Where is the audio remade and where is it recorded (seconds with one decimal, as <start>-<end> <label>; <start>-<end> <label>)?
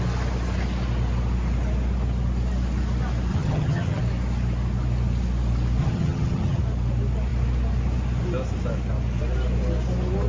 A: 0.0-3.3 recorded; 3.3-4.0 remade; 4.0-5.8 recorded; 5.8-6.6 remade; 6.6-10.3 recorded